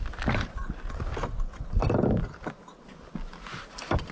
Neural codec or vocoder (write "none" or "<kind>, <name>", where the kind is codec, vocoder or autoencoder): none